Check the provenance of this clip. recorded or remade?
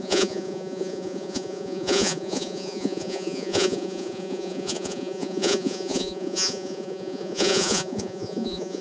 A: remade